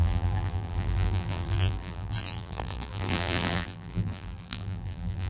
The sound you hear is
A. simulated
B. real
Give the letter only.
A